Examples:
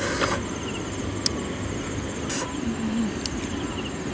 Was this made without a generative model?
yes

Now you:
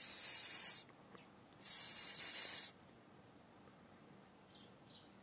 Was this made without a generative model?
yes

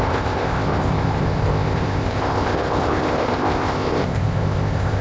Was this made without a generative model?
no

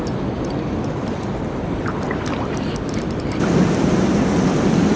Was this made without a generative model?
yes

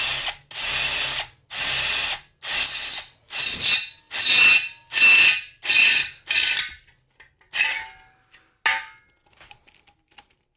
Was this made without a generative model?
yes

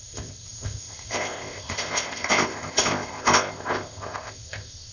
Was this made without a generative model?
no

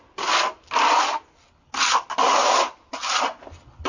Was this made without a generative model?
yes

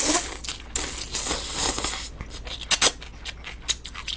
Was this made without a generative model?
yes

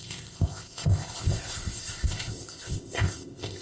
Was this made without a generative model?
no